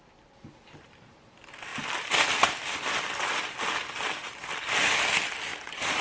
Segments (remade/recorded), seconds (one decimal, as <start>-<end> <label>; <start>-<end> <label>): 0.0-6.0 recorded

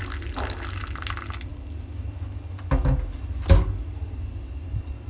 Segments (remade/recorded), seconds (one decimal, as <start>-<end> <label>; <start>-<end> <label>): 0.0-5.1 recorded

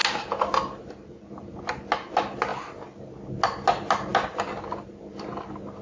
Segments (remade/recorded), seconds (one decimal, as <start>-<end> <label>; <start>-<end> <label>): 0.0-5.8 recorded

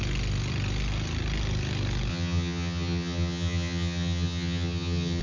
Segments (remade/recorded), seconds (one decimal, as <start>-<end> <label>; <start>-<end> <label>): 0.0-2.1 recorded; 2.1-5.2 remade

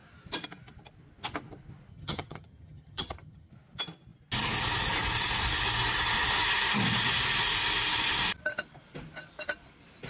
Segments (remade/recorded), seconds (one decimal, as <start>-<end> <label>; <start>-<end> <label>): 0.0-1.9 recorded; 1.9-3.5 remade; 3.5-10.1 recorded

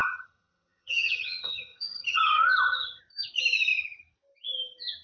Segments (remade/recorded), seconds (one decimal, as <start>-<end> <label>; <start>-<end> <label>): 0.0-3.0 remade; 3.0-5.0 recorded

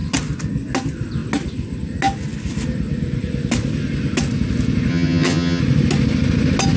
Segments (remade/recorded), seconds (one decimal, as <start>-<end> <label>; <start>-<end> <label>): 0.0-4.9 recorded; 4.9-5.6 remade; 5.6-6.8 recorded